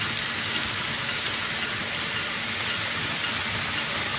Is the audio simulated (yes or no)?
no